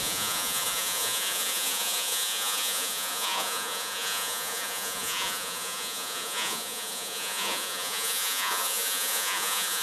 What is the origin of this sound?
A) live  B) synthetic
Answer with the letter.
B